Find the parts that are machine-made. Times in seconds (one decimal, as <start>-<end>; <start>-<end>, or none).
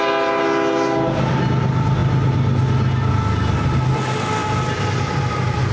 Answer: 4.4-5.2